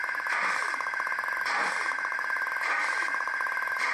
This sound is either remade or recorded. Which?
remade